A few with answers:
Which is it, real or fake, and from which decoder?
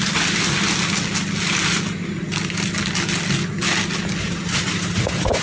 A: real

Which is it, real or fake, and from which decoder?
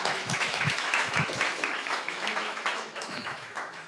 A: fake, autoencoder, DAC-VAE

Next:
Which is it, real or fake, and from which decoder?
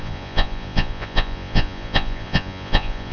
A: fake, vocoder, Vocos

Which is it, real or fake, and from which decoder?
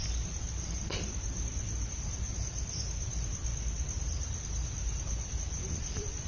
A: real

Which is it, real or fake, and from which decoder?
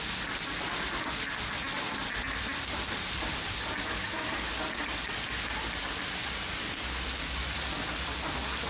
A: real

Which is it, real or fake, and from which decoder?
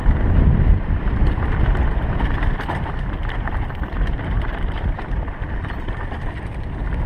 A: fake, vocoder, BigVGAN v2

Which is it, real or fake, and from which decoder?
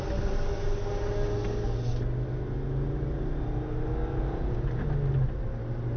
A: real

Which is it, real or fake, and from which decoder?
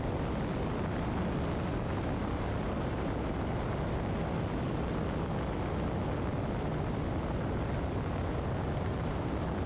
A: real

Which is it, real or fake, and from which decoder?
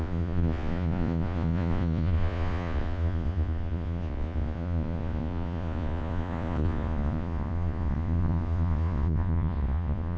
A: fake, vocoder, Vocos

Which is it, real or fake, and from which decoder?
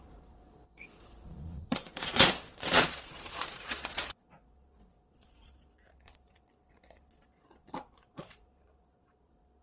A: fake, vocoder, Vocos